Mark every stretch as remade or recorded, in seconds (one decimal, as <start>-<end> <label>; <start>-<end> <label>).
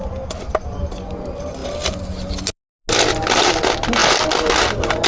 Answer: 0.0-5.1 recorded